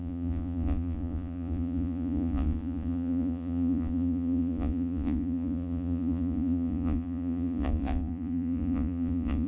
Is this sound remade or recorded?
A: remade